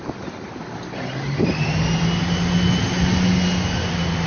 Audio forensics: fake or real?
real